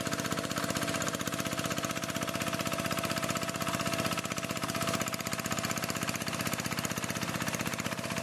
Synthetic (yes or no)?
no